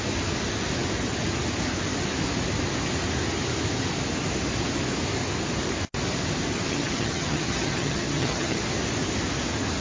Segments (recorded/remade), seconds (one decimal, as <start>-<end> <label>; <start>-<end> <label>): 0.0-6.7 recorded; 6.7-8.6 remade; 8.6-9.8 recorded